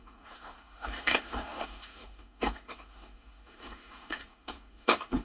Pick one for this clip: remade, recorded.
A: remade